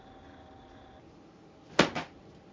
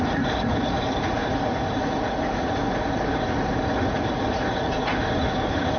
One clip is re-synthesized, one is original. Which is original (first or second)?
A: first